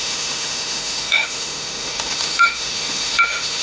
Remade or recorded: remade